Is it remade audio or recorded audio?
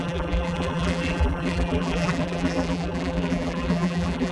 remade